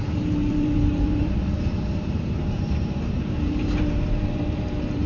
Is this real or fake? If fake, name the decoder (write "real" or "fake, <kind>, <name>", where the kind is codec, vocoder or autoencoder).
fake, vocoder, BigVGAN v2